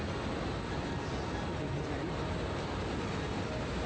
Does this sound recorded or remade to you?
recorded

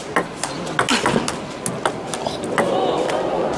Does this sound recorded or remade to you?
recorded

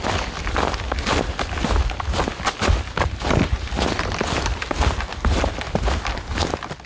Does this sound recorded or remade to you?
recorded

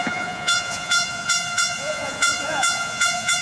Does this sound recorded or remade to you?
remade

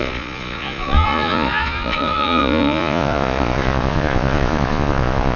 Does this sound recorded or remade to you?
remade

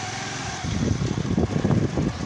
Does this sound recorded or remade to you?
recorded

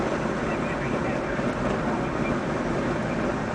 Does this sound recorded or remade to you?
recorded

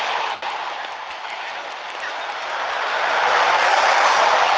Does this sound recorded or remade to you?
recorded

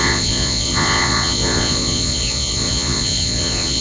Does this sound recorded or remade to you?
remade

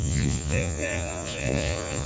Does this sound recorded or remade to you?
remade